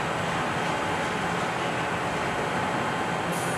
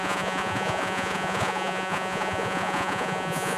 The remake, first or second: second